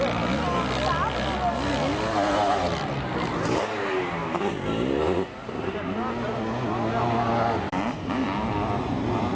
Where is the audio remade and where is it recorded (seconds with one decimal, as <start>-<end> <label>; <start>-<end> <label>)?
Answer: 0.0-1.9 recorded; 1.9-3.6 remade; 3.6-9.3 recorded